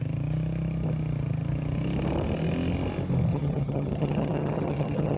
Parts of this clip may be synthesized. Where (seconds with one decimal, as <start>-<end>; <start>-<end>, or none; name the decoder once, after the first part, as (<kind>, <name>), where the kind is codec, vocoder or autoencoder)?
3.3-5.2 (vocoder, HiFi-GAN)

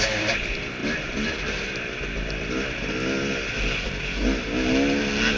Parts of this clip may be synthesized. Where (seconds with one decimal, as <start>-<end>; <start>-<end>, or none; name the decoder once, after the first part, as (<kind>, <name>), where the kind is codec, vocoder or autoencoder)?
none

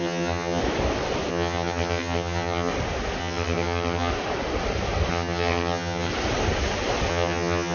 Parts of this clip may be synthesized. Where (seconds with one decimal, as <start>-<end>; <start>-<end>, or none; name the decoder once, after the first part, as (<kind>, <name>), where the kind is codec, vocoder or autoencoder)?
0.0-0.6 (vocoder, HiFi-GAN); 1.3-2.7; 3.2-4.1; 5.1-6.1; 7.1-7.7